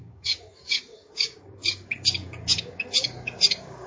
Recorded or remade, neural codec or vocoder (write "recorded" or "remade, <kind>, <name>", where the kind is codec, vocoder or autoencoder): remade, codec, DAC